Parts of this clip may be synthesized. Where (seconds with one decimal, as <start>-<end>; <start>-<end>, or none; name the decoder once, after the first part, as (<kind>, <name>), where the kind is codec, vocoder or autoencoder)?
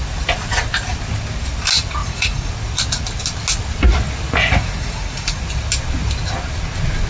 2.0-2.5 (vocoder, Vocos); 4.4-5.4